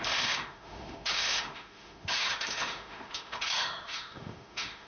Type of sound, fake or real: fake